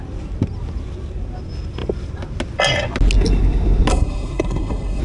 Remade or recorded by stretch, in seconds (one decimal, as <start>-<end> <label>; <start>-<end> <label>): 0.0-3.9 recorded; 3.9-5.0 remade

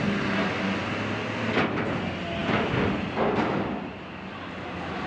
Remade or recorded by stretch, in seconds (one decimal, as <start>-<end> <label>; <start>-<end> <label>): 0.0-5.1 recorded

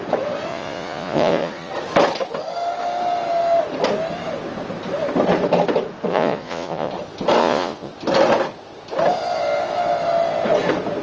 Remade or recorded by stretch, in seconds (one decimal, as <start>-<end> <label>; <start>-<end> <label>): 0.0-0.5 recorded; 0.5-1.7 remade; 1.7-6.1 recorded; 6.1-6.9 remade; 6.9-7.4 recorded; 7.4-7.9 remade; 7.9-11.0 recorded

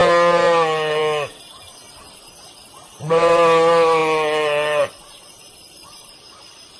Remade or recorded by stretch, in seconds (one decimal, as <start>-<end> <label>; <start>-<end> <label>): 0.0-6.8 recorded

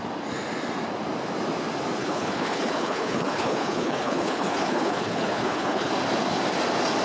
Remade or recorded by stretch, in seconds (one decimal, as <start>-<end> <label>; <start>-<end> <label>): 0.0-2.0 recorded; 2.0-5.9 remade; 5.9-7.0 recorded

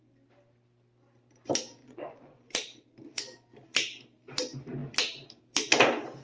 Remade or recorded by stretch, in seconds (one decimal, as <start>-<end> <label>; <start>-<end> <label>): 0.0-1.8 recorded; 1.8-2.5 remade; 2.5-6.2 recorded

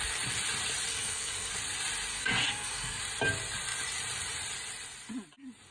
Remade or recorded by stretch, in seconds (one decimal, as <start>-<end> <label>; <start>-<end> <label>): 0.0-0.9 recorded; 0.9-1.5 remade; 1.5-2.1 recorded; 2.1-3.0 remade; 3.0-5.7 recorded